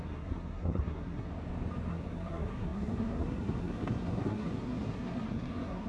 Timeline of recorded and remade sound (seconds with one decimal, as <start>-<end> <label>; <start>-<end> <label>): 0.0-1.3 remade; 1.3-1.9 recorded; 1.9-5.9 remade